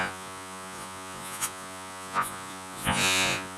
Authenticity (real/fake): fake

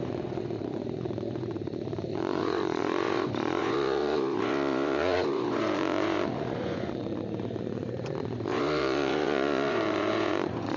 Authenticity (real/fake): fake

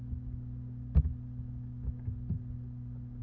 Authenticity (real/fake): real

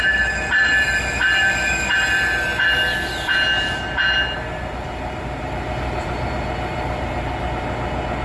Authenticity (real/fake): real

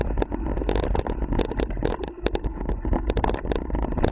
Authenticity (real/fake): real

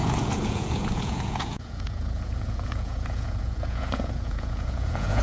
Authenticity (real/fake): fake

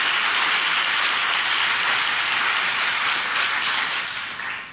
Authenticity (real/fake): real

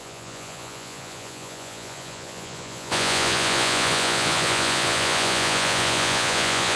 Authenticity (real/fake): fake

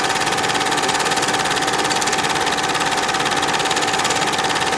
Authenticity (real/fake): real